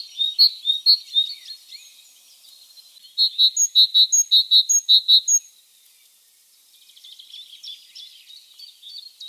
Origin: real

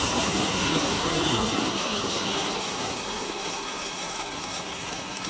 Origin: fake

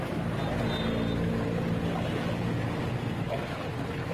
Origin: real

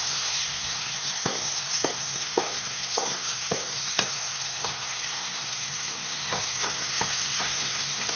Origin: fake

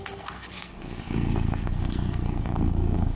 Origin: fake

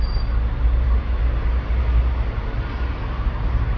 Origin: real